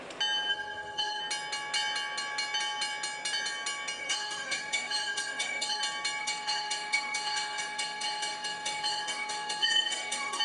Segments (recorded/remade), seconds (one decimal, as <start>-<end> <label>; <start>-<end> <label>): 0.0-0.5 recorded; 0.5-1.2 remade; 1.2-4.0 recorded; 4.0-5.8 remade; 5.8-6.2 recorded; 6.2-10.4 remade